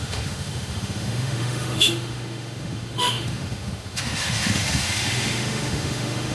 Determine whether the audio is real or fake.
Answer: fake